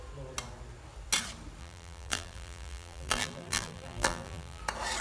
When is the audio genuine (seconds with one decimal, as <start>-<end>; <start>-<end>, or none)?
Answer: 0.0-1.6; 4.6-5.0